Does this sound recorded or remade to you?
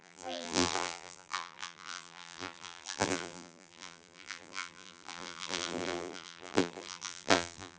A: remade